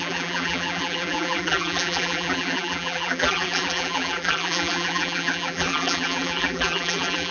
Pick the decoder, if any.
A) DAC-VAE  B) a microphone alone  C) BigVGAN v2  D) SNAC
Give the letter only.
C